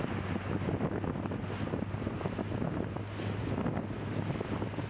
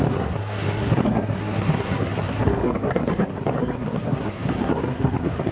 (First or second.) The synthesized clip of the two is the second